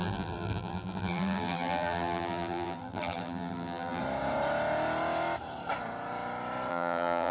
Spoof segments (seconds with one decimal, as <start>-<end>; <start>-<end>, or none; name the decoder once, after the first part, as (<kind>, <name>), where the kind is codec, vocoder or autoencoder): 0.0-4.0 (vocoder, BigVGAN v2); 6.7-7.3